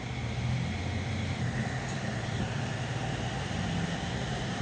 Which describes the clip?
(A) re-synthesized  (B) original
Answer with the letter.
B